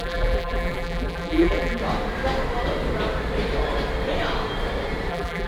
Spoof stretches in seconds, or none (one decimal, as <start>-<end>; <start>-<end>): 0.0-1.8; 5.1-5.5